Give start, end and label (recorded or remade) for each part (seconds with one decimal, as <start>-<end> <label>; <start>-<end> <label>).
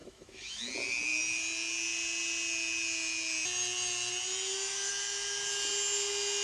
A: 0.0-0.6 remade; 0.6-6.4 recorded